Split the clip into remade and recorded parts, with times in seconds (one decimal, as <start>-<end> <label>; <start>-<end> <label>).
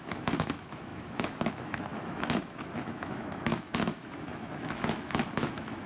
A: 0.0-5.9 remade